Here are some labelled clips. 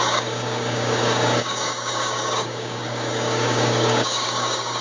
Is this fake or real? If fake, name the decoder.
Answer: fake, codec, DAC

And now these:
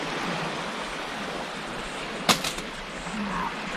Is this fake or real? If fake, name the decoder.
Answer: real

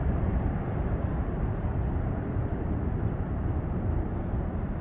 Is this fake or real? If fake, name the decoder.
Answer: real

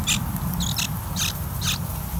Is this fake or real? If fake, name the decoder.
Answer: real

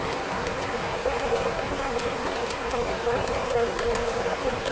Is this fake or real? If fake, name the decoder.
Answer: fake, codec, SNAC